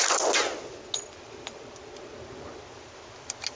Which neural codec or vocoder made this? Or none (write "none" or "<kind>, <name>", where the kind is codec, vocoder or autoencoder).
none